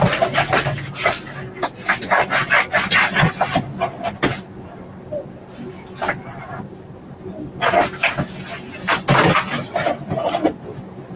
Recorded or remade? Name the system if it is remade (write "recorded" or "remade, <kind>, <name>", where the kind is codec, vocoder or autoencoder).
recorded